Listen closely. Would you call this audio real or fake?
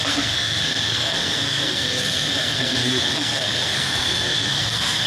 fake